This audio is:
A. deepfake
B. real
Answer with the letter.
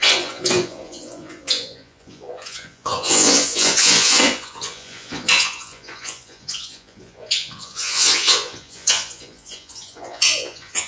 A